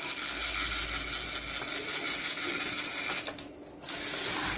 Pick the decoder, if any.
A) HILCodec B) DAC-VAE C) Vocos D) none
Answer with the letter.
D